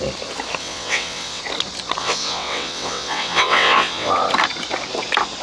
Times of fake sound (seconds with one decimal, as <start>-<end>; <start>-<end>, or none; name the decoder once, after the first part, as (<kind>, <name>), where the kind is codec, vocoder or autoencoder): 0.6-1.4 (vocoder, WaveNeXt); 2.0-4.1